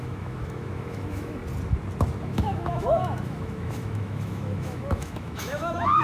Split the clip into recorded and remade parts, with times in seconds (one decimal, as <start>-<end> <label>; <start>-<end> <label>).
0.0-1.4 remade; 1.4-2.2 recorded; 2.2-6.0 remade